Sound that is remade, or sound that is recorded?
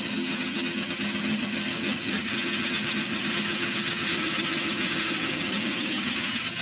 remade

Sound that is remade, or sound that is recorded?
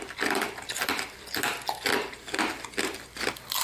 recorded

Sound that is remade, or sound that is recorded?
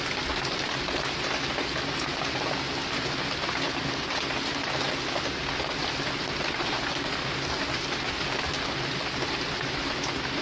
recorded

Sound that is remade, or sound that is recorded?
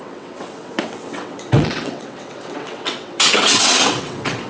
remade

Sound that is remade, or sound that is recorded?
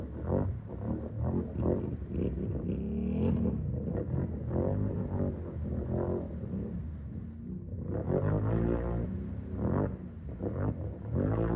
recorded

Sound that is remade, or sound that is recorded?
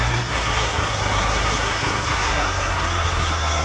remade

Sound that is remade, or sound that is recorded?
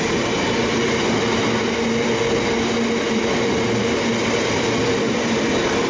recorded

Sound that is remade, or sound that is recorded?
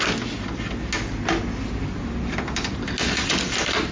recorded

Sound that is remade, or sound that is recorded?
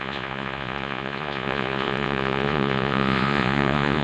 remade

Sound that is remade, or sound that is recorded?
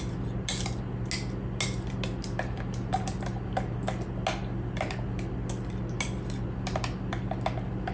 recorded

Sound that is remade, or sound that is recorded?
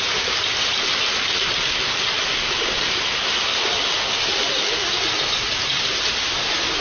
recorded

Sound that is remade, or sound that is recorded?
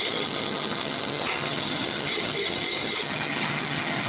remade